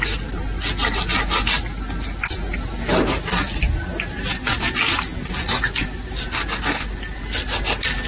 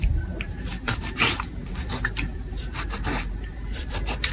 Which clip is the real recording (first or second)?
first